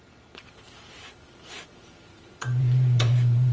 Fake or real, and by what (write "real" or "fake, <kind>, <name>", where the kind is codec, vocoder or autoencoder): fake, vocoder, BigVGAN v2